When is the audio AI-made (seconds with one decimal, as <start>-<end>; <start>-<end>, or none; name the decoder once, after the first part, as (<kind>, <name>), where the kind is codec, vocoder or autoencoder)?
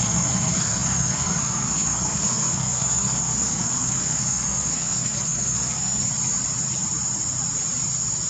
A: 0.0-6.1 (codec, SNAC)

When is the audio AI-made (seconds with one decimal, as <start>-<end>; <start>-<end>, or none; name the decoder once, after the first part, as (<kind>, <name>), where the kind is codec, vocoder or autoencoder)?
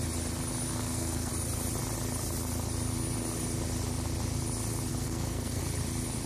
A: 0.7-1.3 (codec, SNAC); 4.9-5.6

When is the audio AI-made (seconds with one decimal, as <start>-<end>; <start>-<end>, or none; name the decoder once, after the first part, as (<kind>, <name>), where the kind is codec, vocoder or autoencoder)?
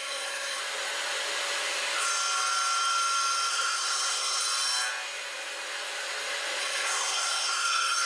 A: 0.0-0.6 (codec, SNAC); 3.5-4.4; 6.6-8.1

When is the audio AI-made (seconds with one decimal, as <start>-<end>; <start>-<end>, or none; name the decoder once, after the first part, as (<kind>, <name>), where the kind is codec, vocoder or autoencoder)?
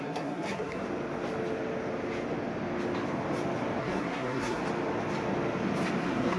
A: 0.0-0.8 (codec, SNAC); 3.8-4.6; 6.0-6.4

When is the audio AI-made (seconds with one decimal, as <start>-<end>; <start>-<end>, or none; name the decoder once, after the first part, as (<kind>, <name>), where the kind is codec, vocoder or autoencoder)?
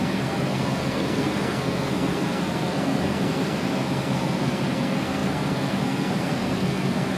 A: 0.0-7.2 (codec, SNAC)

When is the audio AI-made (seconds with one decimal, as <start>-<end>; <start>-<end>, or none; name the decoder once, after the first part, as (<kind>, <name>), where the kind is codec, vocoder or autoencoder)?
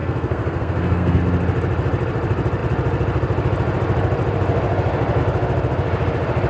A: 0.0-1.2 (codec, SNAC)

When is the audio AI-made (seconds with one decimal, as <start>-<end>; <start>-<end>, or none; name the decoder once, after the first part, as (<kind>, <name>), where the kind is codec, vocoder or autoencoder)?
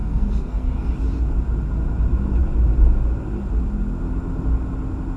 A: 0.0-0.9 (codec, SNAC)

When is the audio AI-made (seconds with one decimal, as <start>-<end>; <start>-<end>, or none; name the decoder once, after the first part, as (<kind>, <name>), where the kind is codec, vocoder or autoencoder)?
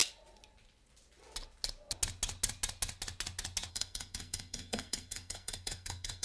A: 3.7-6.2 (codec, SNAC)